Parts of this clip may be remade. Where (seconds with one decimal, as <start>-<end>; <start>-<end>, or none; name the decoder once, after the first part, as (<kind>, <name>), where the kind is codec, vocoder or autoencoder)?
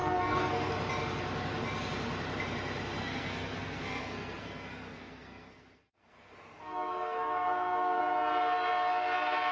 0.0-0.7 (codec, SNAC); 3.0-8.0